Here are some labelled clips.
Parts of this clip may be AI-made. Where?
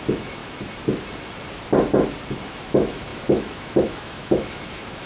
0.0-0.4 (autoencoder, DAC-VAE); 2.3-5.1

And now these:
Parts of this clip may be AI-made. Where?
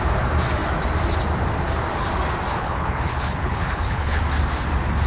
2.5-4.2 (codec, HILCodec)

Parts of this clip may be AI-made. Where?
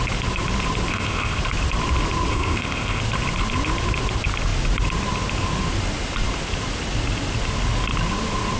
0.9-1.4 (codec, ZipCodec); 2.3-3.0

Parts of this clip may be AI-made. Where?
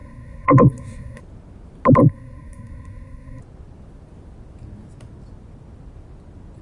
0.0-1.2 (codec, SNAC); 2.0-3.4